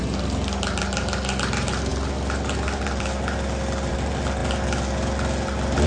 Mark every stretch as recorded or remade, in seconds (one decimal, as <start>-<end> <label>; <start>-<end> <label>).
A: 0.0-5.9 recorded